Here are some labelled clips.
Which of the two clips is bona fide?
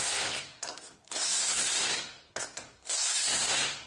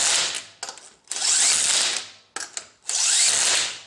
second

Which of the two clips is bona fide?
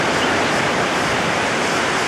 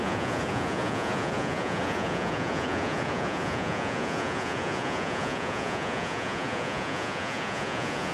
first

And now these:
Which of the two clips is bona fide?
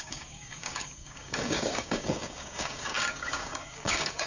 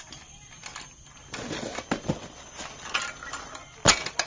second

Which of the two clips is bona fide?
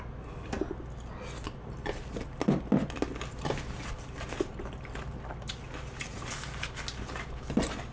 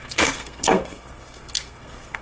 first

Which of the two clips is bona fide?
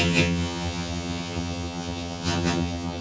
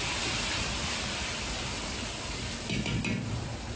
second